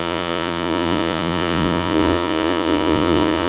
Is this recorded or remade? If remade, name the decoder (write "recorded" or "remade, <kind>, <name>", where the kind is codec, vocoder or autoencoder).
remade, vocoder, Vocos